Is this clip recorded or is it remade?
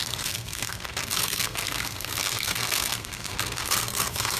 remade